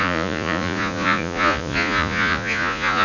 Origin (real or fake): fake